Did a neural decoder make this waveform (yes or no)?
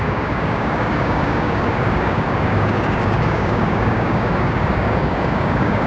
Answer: yes